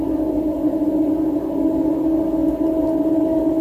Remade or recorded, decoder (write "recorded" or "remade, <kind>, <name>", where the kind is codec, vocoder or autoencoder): recorded